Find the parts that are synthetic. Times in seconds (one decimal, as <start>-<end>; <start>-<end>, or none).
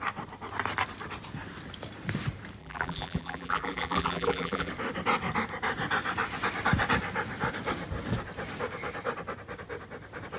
2.6-4.7